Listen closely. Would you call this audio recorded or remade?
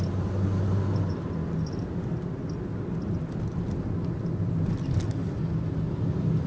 recorded